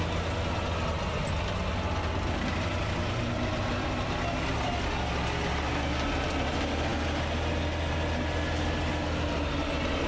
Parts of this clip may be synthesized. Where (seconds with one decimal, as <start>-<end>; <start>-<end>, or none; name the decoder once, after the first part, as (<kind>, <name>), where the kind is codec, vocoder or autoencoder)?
none